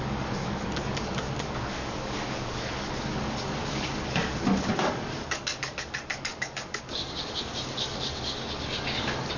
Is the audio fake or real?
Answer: fake